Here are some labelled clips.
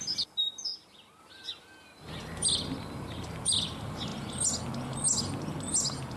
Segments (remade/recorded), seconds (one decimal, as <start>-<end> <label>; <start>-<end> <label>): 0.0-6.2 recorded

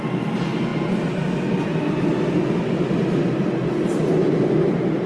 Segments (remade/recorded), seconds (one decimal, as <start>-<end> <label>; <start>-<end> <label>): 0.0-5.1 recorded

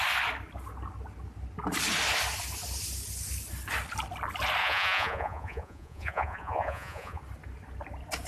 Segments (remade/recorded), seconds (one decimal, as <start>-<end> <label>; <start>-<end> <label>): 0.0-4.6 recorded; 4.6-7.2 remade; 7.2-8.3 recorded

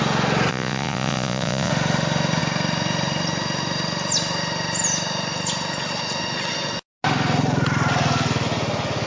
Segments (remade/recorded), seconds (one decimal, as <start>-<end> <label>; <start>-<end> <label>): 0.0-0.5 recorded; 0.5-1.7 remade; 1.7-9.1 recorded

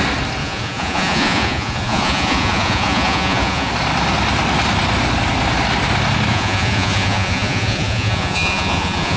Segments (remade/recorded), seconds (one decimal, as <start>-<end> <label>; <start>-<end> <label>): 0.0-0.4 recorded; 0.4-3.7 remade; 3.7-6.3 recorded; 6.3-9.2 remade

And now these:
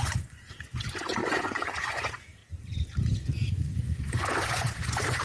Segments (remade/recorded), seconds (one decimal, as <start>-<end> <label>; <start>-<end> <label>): 0.0-2.4 remade; 2.4-3.5 recorded; 3.5-5.2 remade

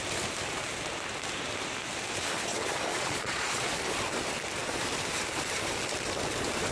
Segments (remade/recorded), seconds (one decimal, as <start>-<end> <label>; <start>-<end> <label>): 0.0-2.9 recorded; 2.9-3.7 remade; 3.7-6.7 recorded

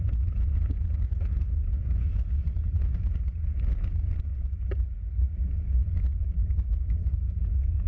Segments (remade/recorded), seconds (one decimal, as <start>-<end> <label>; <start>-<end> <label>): 0.0-2.4 remade; 2.4-7.1 recorded; 7.1-7.9 remade